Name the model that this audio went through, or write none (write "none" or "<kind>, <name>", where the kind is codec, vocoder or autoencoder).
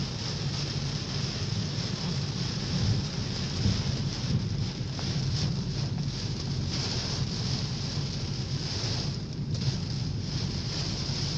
none